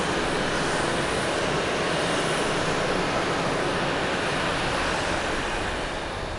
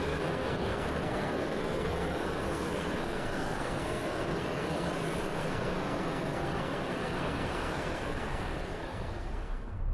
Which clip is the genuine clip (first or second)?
first